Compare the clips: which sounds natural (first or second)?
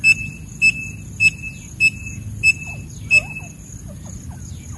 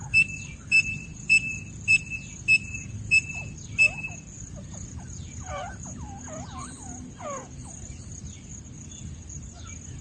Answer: first